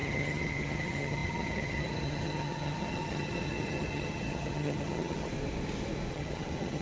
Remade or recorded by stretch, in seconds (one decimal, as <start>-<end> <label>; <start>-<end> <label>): 0.0-5.3 remade; 5.3-6.1 recorded; 6.1-6.8 remade